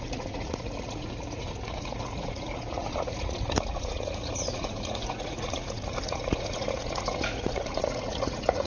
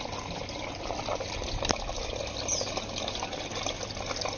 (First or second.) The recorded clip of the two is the second